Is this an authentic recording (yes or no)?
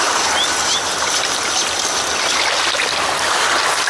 yes